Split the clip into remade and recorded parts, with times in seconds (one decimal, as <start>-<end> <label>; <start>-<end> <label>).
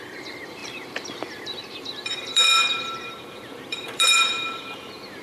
0.0-5.2 remade